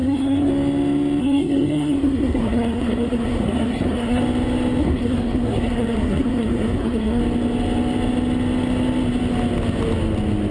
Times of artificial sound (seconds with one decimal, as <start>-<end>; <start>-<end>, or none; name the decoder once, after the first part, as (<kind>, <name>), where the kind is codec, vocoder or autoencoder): 0.0-0.5 (codec, SNAC); 1.2-4.2; 4.8-7.2

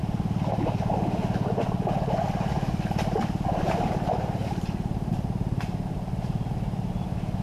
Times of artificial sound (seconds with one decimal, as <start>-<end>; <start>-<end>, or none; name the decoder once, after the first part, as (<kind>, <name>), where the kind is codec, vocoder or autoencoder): 4.4-6.5 (vocoder, BigVGAN v2)

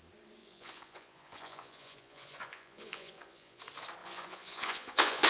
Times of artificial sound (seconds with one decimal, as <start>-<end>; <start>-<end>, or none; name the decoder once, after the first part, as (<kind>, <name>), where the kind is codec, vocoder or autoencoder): 0.4-3.6 (vocoder, Vocos); 4.0-5.3

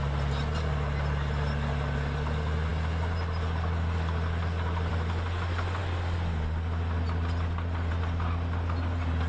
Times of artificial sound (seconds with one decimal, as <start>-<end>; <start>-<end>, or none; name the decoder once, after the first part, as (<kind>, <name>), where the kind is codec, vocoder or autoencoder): none

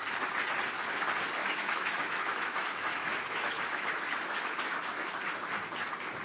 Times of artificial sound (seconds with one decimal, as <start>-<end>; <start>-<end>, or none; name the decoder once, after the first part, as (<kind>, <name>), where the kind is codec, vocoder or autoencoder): 1.4-5.1 (autoencoder, DAC-VAE)

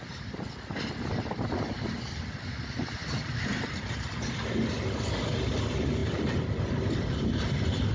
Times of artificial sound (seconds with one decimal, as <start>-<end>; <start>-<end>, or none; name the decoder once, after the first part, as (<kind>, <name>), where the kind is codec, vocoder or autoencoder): none

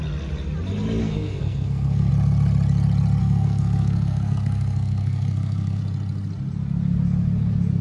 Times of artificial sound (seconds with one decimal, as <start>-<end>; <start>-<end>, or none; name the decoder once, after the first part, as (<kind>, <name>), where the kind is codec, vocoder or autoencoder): 1.0-2.1 (codec, SNAC); 3.2-5.8

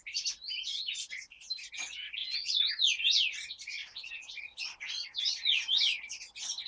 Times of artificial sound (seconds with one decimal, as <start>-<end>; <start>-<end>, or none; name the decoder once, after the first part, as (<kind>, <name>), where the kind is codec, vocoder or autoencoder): 2.2-2.7 (vocoder, Vocos); 3.8-5.2